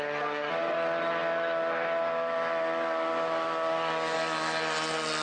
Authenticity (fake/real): real